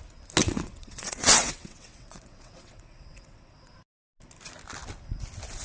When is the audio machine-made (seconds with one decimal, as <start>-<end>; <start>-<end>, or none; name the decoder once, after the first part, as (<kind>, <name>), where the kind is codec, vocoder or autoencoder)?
0.4-3.7 (vocoder, WaveNeXt)